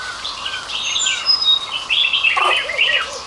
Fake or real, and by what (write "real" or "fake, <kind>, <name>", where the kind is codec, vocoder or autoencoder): real